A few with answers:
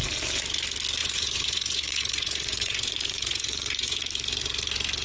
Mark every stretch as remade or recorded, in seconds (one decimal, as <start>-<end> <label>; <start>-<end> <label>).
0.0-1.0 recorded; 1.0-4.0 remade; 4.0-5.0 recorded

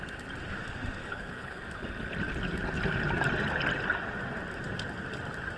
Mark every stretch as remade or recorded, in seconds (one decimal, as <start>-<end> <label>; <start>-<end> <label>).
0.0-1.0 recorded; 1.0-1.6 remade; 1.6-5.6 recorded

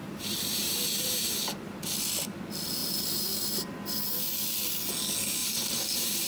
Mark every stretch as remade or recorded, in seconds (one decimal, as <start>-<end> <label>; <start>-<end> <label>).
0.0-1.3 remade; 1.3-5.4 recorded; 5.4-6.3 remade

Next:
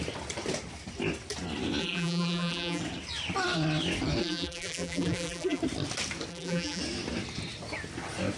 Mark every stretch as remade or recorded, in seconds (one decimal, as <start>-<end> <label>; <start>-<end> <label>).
0.0-1.8 recorded; 1.8-2.8 remade; 2.8-4.2 recorded; 4.2-5.6 remade; 5.6-6.3 recorded; 6.3-6.8 remade; 6.8-8.4 recorded